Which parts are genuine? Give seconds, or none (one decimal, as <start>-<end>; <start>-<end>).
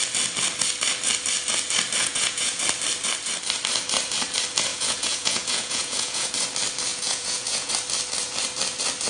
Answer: 0.0-2.0; 2.6-4.7; 6.3-6.9; 7.7-9.1